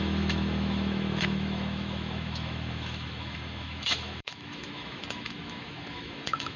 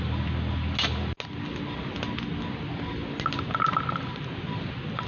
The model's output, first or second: first